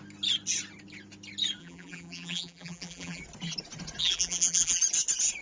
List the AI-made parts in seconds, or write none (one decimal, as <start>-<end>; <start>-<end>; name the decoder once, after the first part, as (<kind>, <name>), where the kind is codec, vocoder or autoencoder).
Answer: 1.6-3.2 (vocoder, BigVGAN v2); 4.0-4.8